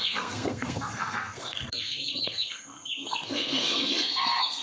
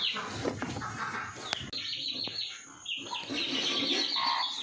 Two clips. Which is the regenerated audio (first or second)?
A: first